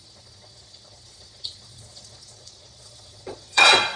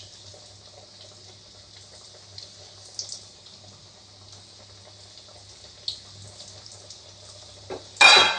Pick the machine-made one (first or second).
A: first